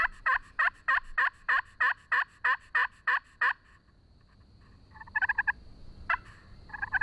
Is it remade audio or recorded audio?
recorded